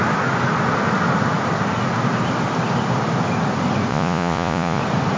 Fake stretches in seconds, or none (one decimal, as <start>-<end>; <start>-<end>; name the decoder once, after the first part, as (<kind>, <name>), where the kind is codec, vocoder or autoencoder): 3.9-4.8 (vocoder, Vocos)